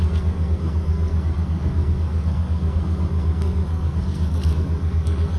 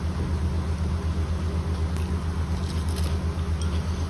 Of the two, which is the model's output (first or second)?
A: first